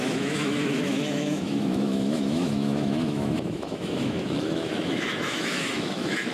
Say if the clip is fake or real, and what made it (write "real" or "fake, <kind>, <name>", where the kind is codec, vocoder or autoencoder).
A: fake, autoencoder, DAC-VAE